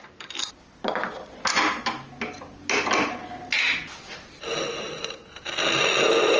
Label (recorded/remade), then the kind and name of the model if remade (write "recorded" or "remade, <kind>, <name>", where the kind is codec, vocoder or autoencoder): recorded